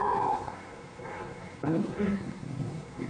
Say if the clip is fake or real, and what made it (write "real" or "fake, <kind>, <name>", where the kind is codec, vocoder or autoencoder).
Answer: fake, codec, SNAC